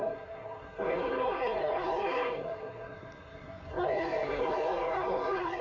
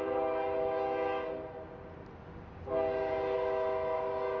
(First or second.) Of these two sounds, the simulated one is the first